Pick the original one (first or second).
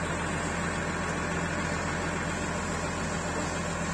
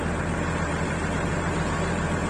first